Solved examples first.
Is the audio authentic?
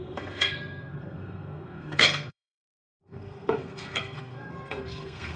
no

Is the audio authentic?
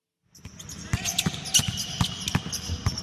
yes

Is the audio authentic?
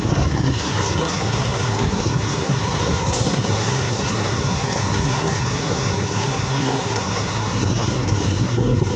no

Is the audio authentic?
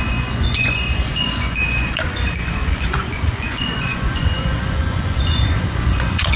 no